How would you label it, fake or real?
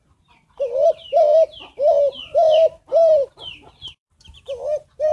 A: fake